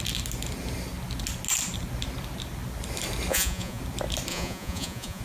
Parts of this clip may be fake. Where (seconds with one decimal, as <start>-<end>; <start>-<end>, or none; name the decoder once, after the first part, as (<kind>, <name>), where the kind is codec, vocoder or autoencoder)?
3.3-3.8 (vocoder, Vocos); 4.3-5.2